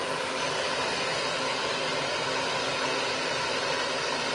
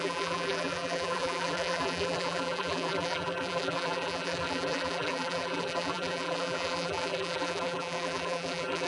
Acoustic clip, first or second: first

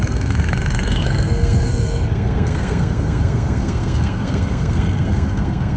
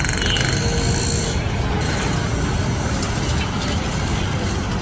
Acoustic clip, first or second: second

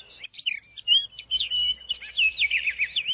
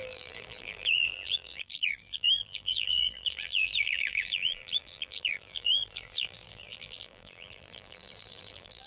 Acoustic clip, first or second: first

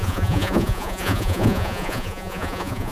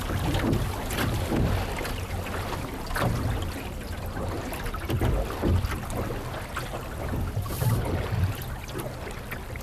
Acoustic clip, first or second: second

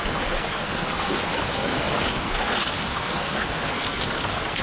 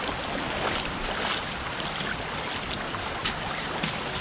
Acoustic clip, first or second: second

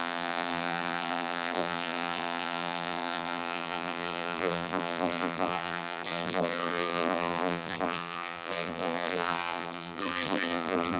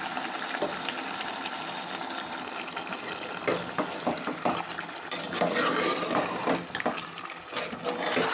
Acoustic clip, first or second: second